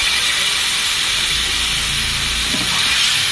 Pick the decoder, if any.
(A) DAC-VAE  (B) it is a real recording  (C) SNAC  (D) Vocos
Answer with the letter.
B